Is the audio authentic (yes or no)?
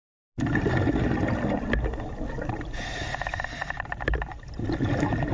yes